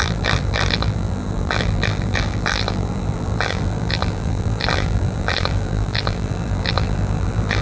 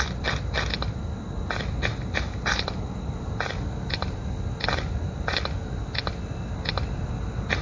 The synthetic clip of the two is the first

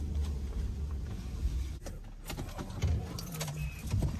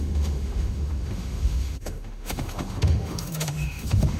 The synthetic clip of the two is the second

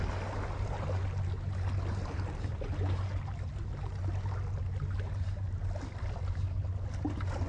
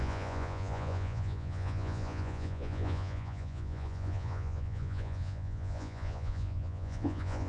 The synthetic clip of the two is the second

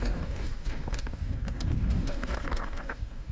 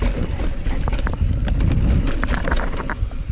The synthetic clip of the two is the first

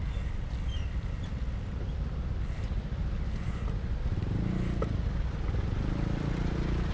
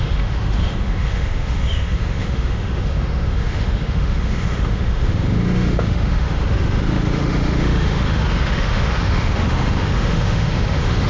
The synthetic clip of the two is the second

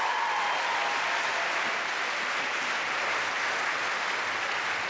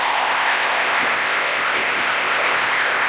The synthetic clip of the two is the second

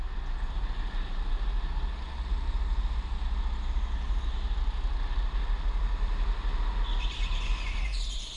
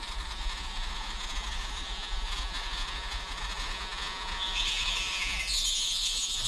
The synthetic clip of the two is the second